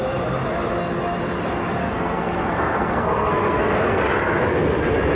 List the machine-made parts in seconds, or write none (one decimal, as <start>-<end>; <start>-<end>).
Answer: 1.8-4.0